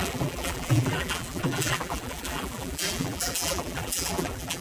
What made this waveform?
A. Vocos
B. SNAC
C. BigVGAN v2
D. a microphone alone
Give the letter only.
C